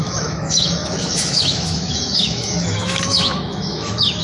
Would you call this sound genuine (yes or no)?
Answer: no